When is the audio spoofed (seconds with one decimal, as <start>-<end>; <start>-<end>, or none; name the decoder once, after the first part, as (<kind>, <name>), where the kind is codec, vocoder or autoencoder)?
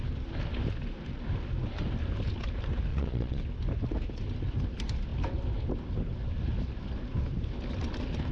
2.9-3.4 (vocoder, Vocos)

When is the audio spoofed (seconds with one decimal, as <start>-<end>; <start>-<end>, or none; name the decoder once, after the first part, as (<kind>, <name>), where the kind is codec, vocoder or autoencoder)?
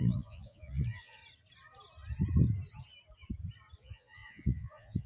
0.0-1.2 (vocoder, Vocos); 3.8-5.1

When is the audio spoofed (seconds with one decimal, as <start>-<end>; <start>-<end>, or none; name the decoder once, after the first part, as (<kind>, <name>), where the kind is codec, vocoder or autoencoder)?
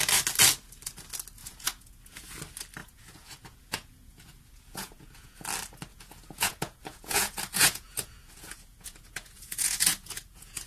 1.4-2.2 (vocoder, Vocos); 2.8-5.4; 5.9-10.7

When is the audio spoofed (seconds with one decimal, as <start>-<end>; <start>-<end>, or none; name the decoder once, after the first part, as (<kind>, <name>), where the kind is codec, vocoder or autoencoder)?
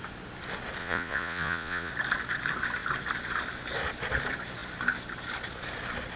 0.8-1.9 (vocoder, Vocos)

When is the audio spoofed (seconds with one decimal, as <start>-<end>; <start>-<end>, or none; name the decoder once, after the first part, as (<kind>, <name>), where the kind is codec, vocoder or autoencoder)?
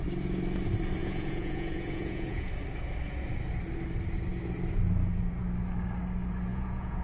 1.0-2.5 (vocoder, Vocos); 6.5-7.0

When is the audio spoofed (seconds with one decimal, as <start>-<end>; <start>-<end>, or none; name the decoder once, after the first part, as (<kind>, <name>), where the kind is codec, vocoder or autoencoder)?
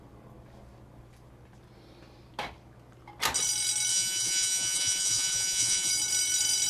3.9-5.9 (vocoder, Vocos)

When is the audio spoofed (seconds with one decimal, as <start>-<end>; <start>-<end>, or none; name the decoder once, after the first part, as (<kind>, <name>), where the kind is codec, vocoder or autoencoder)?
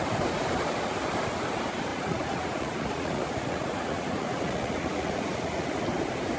1.9-5.7 (vocoder, Vocos)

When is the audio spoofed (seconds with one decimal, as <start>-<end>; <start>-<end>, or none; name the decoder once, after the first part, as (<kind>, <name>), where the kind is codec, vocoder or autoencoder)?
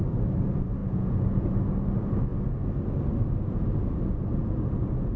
0.8-1.5 (vocoder, Vocos)